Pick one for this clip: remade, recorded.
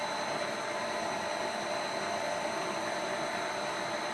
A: recorded